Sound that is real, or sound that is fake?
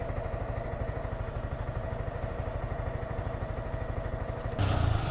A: fake